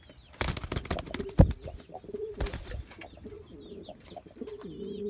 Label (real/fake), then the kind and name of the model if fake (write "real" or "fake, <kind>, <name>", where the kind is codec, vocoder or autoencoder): real